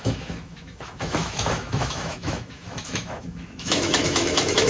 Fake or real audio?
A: fake